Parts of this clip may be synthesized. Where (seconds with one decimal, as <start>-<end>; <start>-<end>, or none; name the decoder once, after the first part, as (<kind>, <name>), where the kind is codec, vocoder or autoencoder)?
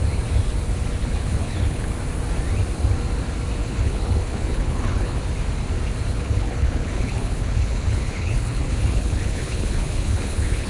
1.0-1.9 (codec, HILCodec); 3.6-5.2; 6.1-10.7